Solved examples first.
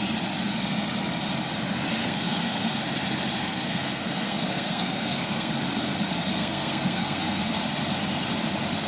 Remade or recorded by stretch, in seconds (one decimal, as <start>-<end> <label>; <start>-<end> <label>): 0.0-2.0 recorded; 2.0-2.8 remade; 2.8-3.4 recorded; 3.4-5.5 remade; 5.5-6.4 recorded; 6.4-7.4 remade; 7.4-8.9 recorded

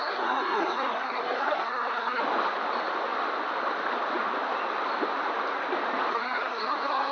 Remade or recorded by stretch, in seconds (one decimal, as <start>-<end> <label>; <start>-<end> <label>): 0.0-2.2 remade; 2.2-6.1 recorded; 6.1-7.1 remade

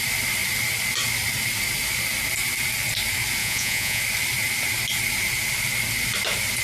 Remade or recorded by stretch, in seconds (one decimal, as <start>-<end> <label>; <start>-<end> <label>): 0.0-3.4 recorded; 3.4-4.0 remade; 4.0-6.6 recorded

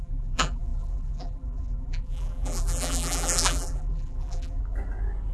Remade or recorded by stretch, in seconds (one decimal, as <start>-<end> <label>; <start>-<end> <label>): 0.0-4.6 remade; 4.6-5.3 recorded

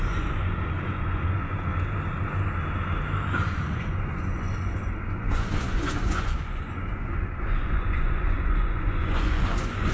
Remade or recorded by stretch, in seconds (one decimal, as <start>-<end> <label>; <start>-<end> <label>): 0.0-1.7 remade; 1.7-3.3 recorded; 3.3-9.9 remade

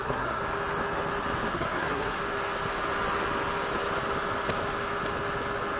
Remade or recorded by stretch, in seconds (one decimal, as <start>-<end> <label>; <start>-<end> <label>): 0.0-0.4 remade; 0.4-1.5 recorded; 1.5-2.2 remade; 2.2-5.8 recorded